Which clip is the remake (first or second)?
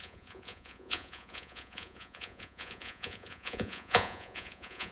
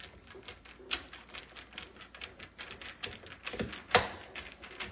first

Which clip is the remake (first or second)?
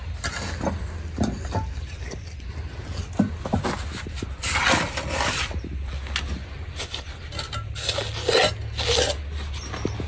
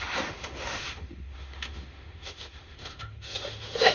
second